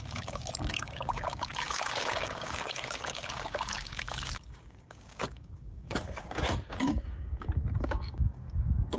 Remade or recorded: remade